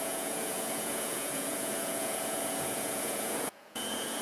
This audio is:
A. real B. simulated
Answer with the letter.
B